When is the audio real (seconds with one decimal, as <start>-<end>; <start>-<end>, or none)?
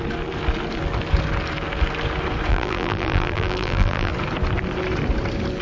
0.0-2.5; 4.1-5.6